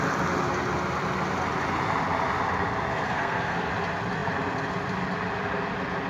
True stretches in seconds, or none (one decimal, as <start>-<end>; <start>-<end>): 0.0-2.9; 3.7-6.1